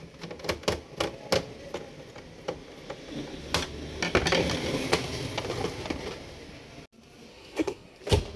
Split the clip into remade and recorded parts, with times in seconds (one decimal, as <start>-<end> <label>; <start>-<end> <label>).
0.0-7.3 recorded; 7.3-8.0 remade; 8.0-8.4 recorded